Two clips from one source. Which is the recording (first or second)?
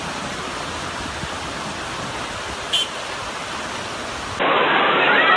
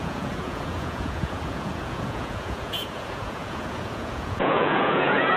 first